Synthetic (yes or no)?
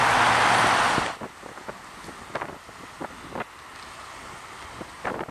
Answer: no